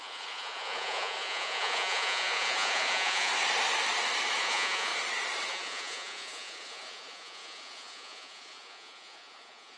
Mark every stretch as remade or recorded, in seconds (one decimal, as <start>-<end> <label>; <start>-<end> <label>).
0.0-3.3 remade; 3.3-4.4 recorded; 4.4-4.9 remade; 4.9-5.5 recorded; 5.5-9.8 remade